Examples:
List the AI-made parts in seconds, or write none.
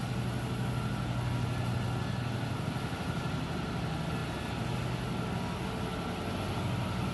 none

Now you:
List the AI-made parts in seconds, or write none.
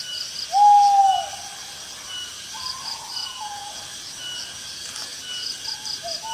3.2-3.7 (vocoder, Vocos)